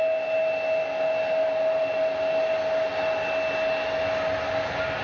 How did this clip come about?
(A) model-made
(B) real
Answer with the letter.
B